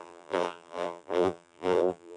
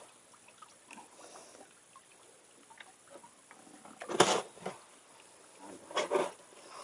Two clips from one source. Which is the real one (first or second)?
second